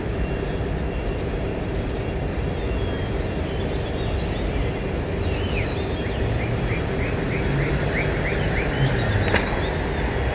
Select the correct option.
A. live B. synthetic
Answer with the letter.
A